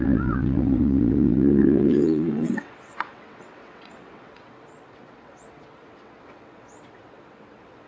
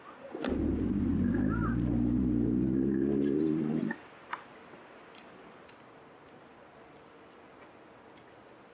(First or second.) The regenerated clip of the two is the first